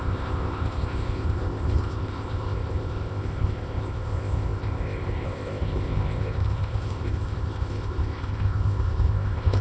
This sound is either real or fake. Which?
fake